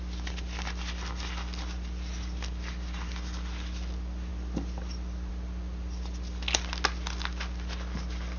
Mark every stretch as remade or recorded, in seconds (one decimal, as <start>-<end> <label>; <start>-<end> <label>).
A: 0.0-8.4 recorded